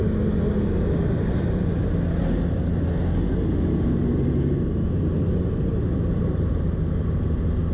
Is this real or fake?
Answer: real